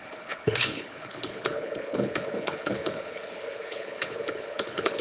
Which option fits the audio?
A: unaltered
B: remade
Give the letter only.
B